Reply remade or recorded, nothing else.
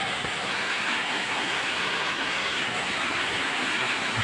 remade